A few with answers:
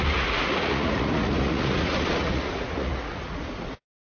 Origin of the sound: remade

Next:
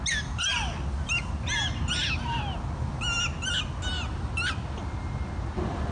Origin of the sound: recorded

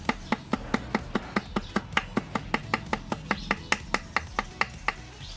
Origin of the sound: recorded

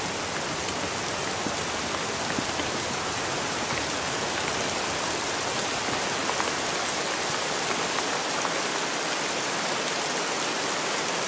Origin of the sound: recorded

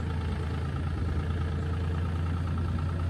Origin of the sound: recorded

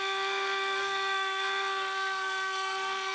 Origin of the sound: remade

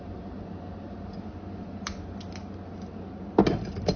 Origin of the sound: recorded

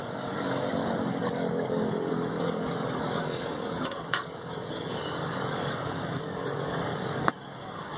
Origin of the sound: remade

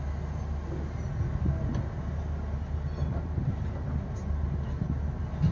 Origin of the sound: recorded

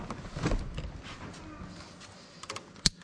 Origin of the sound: recorded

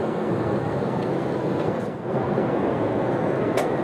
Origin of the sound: remade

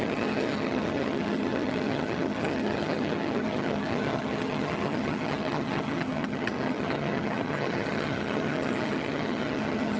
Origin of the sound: remade